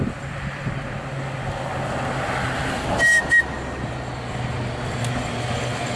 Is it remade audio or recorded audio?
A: recorded